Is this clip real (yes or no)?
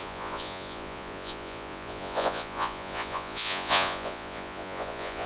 no